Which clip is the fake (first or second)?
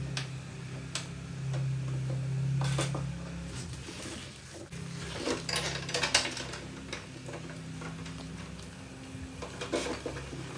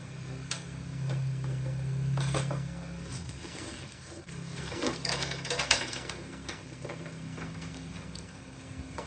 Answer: second